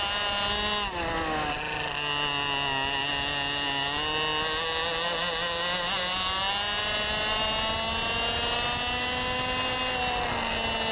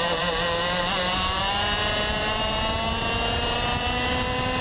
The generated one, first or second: second